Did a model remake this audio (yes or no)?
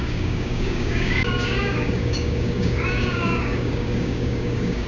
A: yes